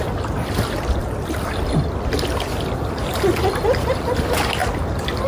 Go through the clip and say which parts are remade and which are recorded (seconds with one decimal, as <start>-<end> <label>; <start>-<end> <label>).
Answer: 0.0-4.6 recorded; 4.6-5.3 remade